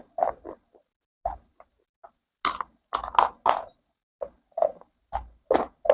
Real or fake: real